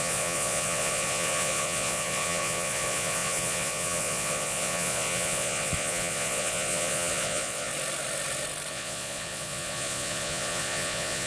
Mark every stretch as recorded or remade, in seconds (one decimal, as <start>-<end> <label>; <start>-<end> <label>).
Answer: 0.0-7.7 remade; 7.7-8.7 recorded; 8.7-11.3 remade